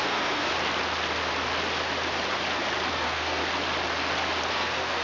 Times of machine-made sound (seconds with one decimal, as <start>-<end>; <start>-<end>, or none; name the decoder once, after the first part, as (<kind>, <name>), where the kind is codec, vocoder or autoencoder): 0.0-0.5 (codec, SNAC); 2.9-3.4; 4.5-5.0